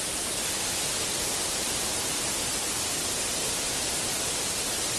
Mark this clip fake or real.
real